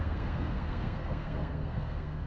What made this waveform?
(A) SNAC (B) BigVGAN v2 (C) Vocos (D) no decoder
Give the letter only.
A